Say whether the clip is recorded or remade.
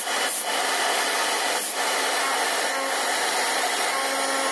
recorded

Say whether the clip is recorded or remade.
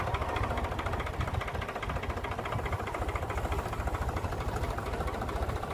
remade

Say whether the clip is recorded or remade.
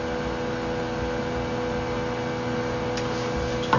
recorded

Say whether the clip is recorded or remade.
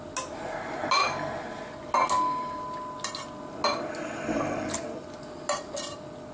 recorded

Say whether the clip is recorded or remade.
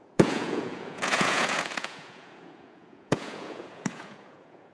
remade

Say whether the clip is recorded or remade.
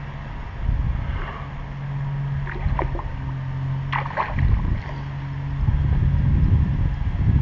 recorded